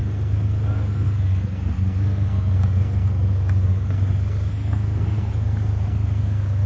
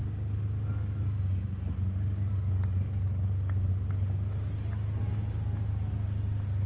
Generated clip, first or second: first